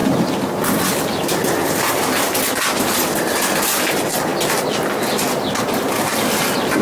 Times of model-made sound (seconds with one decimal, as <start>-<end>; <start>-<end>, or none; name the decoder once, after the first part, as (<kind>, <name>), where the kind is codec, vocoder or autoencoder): none